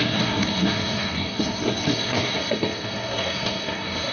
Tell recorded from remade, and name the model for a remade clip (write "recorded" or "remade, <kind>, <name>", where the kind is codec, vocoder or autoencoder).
remade, codec, SNAC